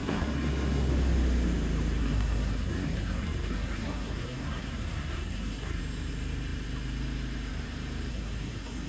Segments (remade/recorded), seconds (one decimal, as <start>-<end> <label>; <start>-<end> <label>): 0.0-0.9 remade; 0.9-2.0 recorded; 2.0-5.8 remade; 5.8-8.1 recorded; 8.1-8.9 remade